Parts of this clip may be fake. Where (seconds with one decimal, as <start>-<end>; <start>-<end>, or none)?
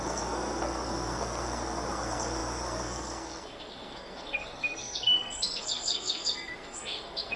0.0-7.4